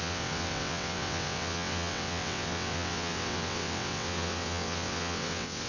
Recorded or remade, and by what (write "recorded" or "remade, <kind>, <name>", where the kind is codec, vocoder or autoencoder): remade, vocoder, WaveNeXt